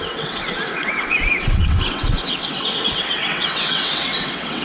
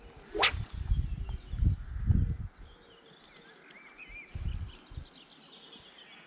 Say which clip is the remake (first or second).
first